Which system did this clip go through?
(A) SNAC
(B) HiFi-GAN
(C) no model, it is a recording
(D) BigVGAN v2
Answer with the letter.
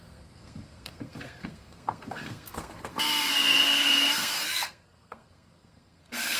A